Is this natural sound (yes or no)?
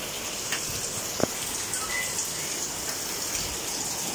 yes